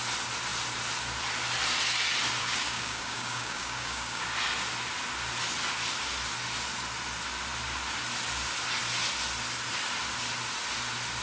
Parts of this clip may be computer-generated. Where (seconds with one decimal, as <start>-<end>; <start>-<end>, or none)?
2.4-4.2